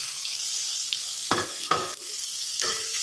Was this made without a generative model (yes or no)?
no